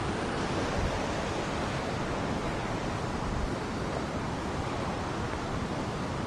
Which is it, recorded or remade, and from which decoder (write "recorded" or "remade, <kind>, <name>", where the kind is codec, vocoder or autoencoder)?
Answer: recorded